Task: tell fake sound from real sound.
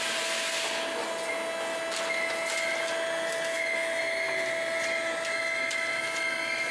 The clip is real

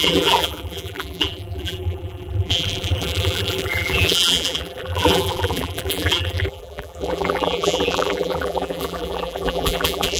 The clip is fake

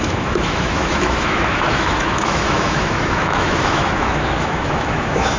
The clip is fake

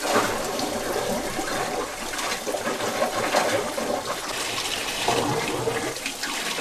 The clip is real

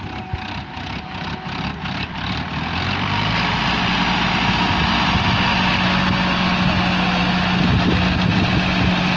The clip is real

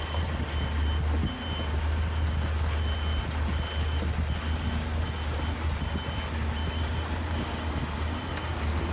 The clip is real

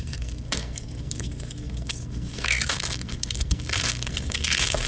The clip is fake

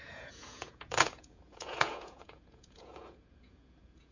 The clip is fake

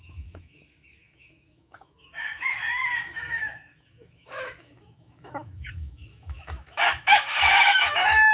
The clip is fake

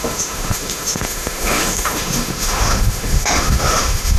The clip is fake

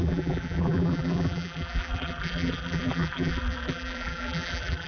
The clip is fake